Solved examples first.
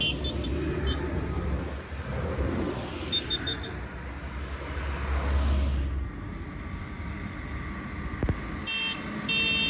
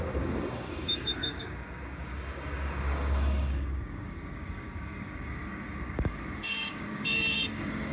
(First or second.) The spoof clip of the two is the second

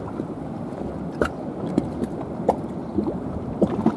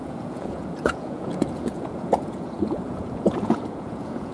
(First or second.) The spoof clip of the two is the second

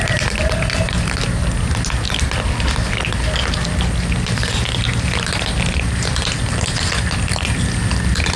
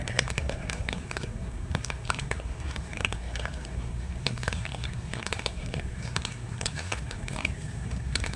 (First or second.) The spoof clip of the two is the second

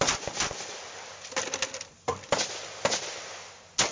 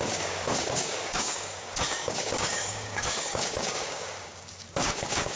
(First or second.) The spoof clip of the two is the second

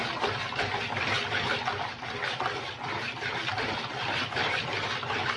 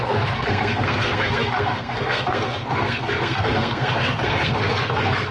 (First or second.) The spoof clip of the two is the second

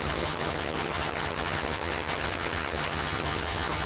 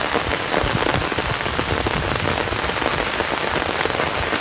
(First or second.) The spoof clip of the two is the first